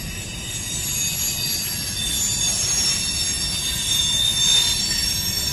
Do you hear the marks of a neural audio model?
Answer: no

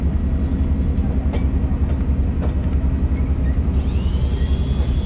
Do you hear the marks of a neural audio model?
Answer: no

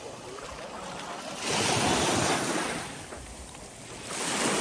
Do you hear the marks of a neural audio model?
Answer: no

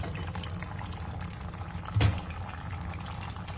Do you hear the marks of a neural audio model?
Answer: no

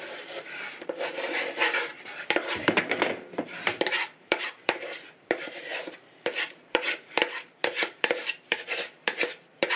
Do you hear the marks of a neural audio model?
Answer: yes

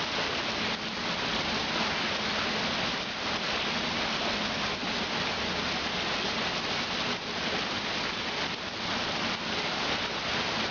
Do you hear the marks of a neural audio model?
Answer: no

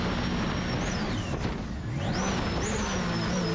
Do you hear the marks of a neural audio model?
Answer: no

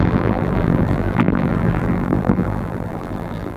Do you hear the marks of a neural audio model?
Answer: yes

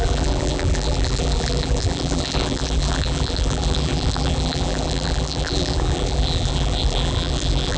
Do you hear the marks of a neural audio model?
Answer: yes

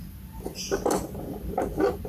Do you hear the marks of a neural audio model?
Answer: no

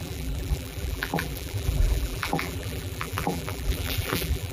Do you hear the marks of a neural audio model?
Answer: yes